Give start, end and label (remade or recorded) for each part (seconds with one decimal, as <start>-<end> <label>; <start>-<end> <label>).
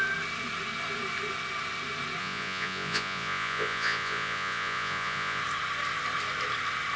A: 0.0-2.2 recorded; 2.2-5.4 remade; 5.4-7.0 recorded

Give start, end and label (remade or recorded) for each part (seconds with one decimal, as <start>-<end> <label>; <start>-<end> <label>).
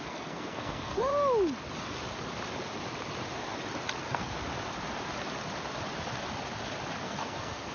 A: 0.0-1.1 remade; 1.1-4.0 recorded; 4.0-4.4 remade; 4.4-7.0 recorded; 7.0-7.7 remade